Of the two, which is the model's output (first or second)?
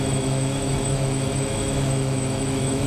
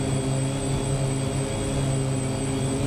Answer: first